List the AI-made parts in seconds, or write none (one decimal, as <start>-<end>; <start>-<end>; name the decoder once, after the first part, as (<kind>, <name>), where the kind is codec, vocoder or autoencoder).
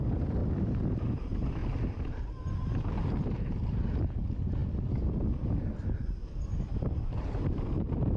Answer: 0.0-0.4 (vocoder, BigVGAN v2); 1.2-1.6; 4.0-8.2